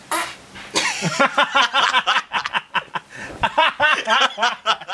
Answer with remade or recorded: remade